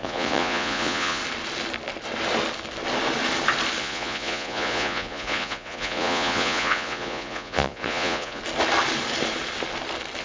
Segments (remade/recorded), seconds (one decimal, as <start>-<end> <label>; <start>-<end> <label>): 0.0-1.2 remade; 1.2-3.8 recorded; 3.8-8.4 remade; 8.4-10.2 recorded

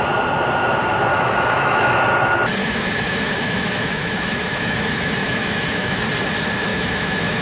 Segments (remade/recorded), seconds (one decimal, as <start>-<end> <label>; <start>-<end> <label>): 0.0-1.1 recorded; 1.1-2.0 remade; 2.0-2.6 recorded; 2.6-6.0 remade; 6.0-6.7 recorded; 6.7-7.4 remade

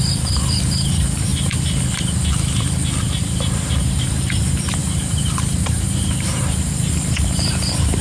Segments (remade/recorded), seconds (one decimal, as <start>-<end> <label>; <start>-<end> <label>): 0.0-1.3 remade; 1.3-3.0 recorded; 3.0-8.0 remade

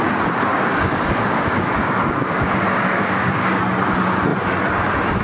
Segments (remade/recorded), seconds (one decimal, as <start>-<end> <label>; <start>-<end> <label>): 0.0-0.5 recorded; 0.5-3.6 remade; 3.6-5.2 recorded

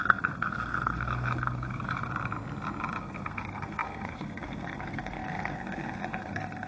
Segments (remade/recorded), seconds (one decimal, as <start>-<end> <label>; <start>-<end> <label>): 0.0-2.1 remade; 2.1-3.0 recorded; 3.0-6.7 remade

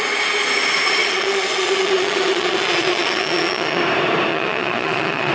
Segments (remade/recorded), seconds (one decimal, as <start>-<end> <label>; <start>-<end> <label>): 0.0-0.8 recorded; 0.8-3.8 remade; 3.8-4.3 recorded; 4.3-5.3 remade

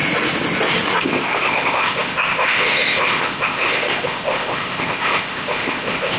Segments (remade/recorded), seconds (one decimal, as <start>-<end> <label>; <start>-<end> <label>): 0.0-1.0 recorded; 1.0-6.2 remade